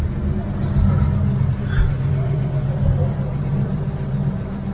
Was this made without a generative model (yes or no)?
yes